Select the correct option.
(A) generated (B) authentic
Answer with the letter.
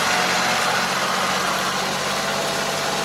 B